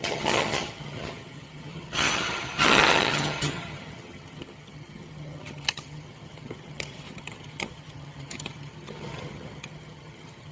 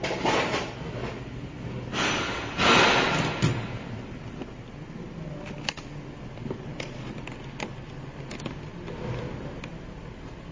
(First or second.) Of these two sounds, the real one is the second